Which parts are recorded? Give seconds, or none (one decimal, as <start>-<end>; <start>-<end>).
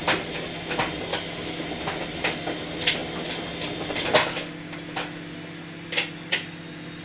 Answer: 0.0-1.1; 1.6-7.0